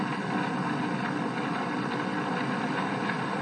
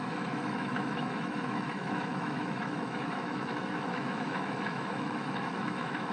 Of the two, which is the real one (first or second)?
first